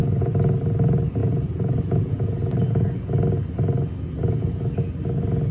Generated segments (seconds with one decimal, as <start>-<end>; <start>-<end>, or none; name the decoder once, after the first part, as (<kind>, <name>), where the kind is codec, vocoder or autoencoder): 0.0-0.6 (vocoder, Vocos); 1.2-3.0; 4.2-4.9